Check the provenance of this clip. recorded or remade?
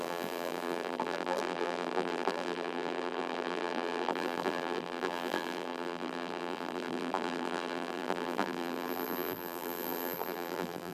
remade